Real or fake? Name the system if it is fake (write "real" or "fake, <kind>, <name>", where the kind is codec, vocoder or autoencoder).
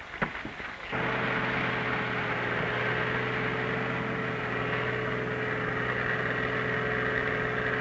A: real